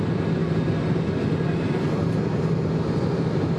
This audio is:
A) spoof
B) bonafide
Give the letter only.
B